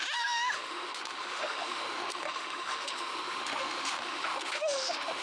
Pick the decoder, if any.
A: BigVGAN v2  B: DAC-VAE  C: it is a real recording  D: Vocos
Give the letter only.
B